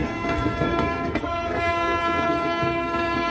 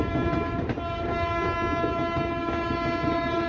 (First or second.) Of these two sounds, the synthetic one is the first